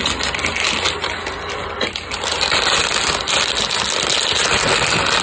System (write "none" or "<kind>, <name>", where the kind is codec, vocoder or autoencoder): none